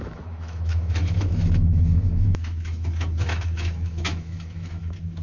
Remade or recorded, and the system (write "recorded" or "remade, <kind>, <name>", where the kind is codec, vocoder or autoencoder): remade, autoencoder, DAC-VAE